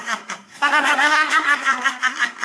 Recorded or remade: remade